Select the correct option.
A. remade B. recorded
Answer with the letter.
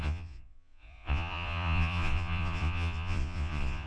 A